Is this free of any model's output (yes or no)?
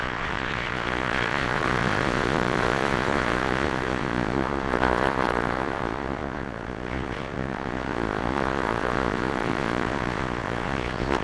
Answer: no